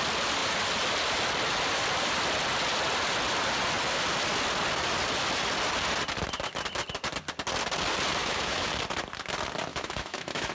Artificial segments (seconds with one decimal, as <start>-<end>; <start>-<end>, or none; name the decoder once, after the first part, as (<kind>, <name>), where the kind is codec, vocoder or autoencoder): 8.2-8.7 (autoencoder, DAC-VAE); 9.7-10.5